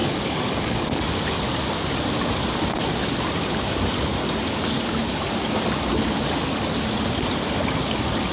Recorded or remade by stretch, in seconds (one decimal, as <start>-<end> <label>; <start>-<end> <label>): 0.0-1.0 remade; 1.0-8.3 recorded